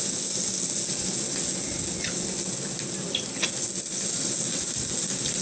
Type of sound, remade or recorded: recorded